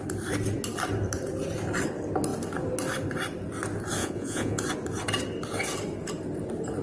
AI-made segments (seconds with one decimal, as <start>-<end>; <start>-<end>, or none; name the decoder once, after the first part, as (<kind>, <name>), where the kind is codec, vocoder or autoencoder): 4.0-4.6 (vocoder, Vocos)